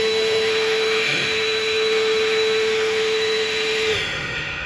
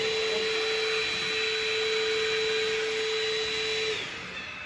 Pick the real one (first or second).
second